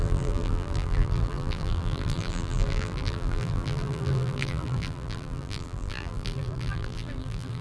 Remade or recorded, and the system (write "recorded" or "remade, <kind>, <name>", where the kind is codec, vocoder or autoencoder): remade, vocoder, BigVGAN v2